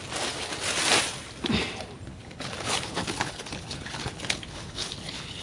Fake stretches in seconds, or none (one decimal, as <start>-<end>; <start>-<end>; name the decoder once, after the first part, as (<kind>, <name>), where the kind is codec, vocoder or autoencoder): 2.1-5.4 (codec, HILCodec)